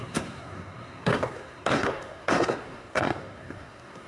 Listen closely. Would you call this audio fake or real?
fake